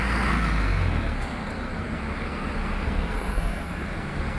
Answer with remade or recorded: remade